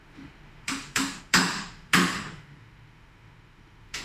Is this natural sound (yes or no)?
no